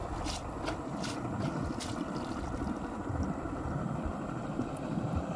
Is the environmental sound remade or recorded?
recorded